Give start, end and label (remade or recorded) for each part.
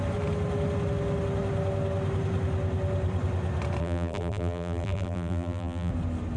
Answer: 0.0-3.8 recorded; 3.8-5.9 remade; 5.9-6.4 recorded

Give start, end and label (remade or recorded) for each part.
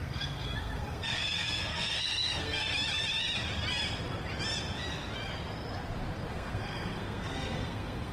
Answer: 0.0-2.7 remade; 2.7-6.3 recorded; 6.3-8.1 remade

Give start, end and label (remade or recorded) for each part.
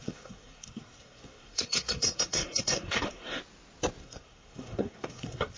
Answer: 0.0-3.4 remade; 3.4-4.0 recorded; 4.0-5.6 remade